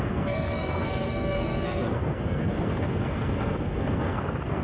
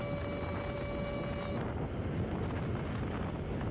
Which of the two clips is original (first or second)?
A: second